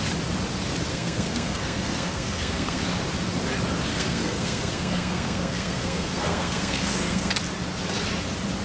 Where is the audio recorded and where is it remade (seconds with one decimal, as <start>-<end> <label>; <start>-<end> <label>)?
0.0-0.9 recorded; 0.9-2.8 remade; 2.8-3.9 recorded; 3.9-7.3 remade; 7.3-8.6 recorded